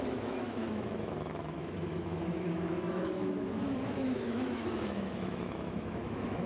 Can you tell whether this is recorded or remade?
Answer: remade